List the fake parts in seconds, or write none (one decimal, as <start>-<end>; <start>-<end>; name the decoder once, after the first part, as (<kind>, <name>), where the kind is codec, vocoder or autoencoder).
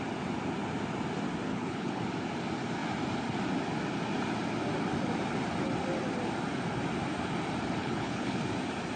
1.5-2.0 (codec, HILCodec); 7.8-8.4